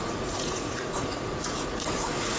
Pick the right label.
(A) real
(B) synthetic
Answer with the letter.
B